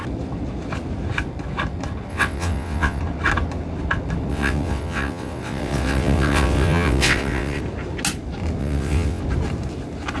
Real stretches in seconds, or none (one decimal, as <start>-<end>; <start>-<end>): 0.0-2.1; 3.0-4.3; 7.6-8.6; 9.2-10.2